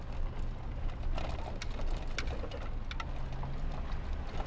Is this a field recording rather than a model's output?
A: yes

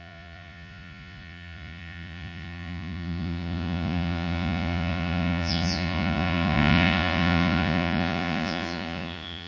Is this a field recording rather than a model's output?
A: no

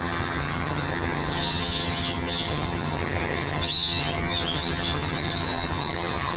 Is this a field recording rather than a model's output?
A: no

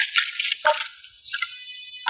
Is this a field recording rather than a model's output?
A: yes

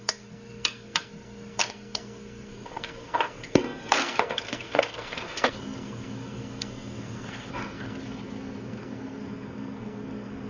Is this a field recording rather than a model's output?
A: no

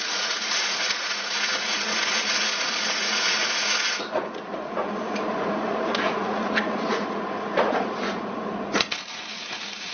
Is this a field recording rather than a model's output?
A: no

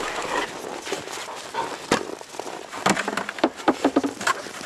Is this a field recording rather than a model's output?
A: no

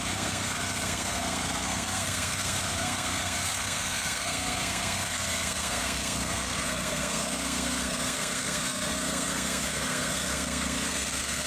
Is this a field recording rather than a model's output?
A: no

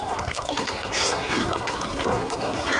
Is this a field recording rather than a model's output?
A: no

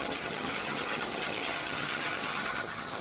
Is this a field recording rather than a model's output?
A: no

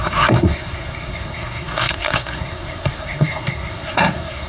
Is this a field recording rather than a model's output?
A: no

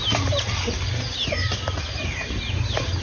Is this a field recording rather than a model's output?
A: yes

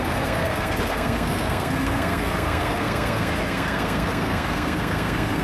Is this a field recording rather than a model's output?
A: no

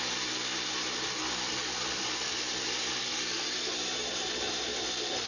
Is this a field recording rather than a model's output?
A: yes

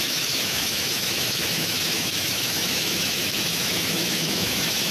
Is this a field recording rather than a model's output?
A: no